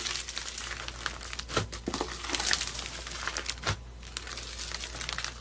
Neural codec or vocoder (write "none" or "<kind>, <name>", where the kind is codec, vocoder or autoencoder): none